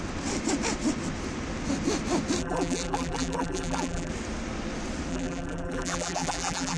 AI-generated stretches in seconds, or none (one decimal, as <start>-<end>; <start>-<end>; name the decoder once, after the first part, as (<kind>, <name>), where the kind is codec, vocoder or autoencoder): 2.4-4.1 (vocoder, BigVGAN v2); 5.1-6.8